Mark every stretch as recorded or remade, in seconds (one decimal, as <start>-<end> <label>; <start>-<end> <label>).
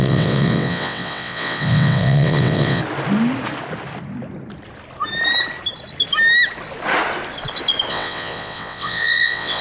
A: 0.0-2.8 remade; 2.8-7.9 recorded; 7.9-9.6 remade